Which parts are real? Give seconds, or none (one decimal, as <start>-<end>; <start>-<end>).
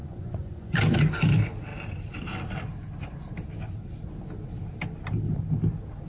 0.8-6.1